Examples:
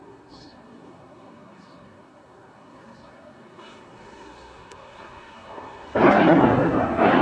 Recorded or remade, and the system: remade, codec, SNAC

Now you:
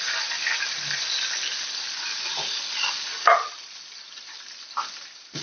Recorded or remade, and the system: recorded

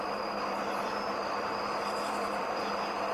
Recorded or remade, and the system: remade, vocoder, BigVGAN v2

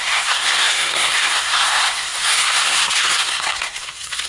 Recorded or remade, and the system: remade, codec, SNAC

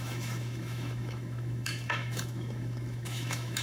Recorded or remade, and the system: remade, autoencoder, DAC-VAE